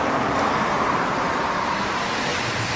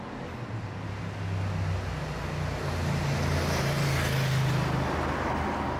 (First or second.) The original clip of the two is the second